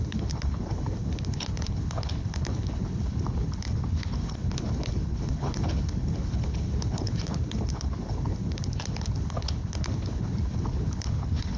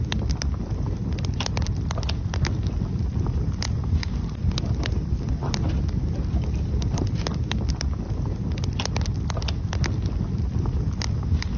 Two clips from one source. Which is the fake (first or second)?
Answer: first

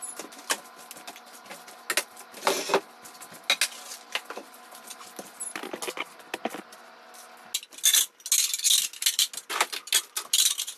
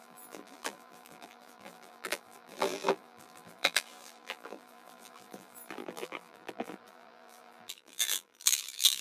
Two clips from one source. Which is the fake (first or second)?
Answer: second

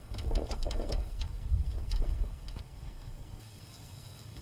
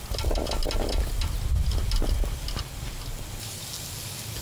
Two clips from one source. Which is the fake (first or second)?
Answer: first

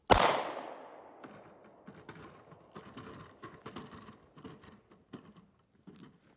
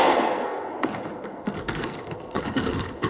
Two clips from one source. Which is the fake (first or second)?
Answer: second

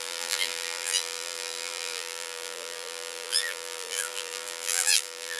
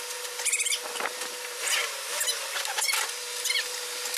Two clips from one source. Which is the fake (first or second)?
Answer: first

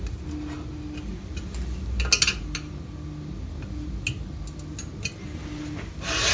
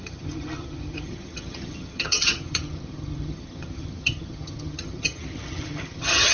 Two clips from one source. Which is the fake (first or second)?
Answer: second